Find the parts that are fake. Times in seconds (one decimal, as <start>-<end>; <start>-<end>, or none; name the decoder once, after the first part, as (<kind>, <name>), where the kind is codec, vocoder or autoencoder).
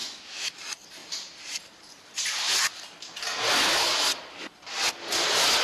0.0-0.6 (autoencoder, DAC-VAE)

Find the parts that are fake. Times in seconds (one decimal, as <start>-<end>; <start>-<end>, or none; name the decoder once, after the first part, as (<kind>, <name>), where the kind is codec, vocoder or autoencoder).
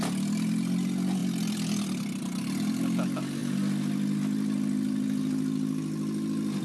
none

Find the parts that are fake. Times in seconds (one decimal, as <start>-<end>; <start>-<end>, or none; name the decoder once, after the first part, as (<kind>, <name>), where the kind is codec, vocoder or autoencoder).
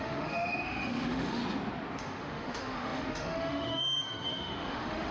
0.0-1.4 (autoencoder, DAC-VAE); 2.0-5.1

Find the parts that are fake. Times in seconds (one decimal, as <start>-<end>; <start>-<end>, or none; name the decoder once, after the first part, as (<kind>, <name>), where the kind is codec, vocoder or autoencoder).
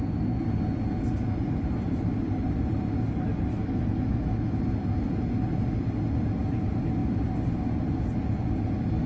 3.5-4.6 (autoencoder, DAC-VAE)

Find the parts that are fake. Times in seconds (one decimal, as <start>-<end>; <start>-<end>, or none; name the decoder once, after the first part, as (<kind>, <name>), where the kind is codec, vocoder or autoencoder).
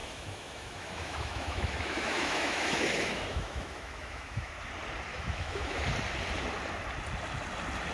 0.0-4.5 (autoencoder, DAC-VAE); 5.1-5.8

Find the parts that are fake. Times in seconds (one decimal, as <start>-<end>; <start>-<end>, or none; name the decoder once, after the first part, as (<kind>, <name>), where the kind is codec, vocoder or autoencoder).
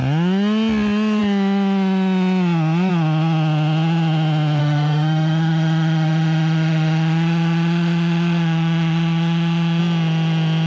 4.6-9.8 (autoencoder, DAC-VAE)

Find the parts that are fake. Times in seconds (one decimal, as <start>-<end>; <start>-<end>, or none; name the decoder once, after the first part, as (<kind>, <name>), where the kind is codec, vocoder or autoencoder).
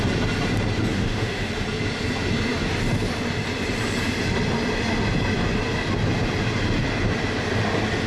0.9-1.5 (autoencoder, DAC-VAE)